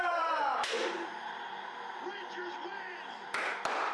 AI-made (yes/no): yes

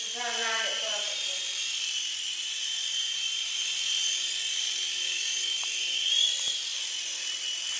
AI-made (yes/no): yes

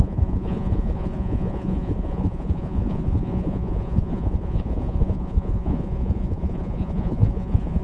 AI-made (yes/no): yes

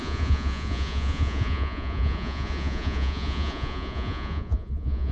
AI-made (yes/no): yes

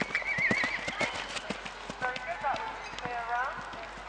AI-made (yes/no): no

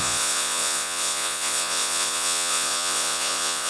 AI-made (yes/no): yes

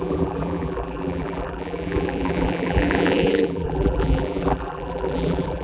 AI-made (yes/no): yes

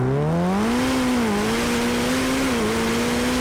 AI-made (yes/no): no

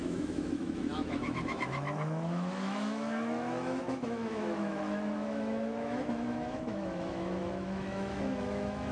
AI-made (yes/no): yes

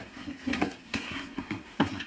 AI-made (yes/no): yes